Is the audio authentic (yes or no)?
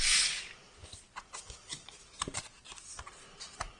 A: yes